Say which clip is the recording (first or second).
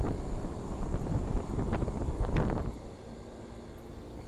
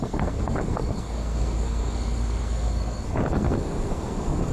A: first